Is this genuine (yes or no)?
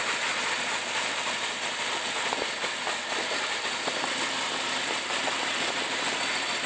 no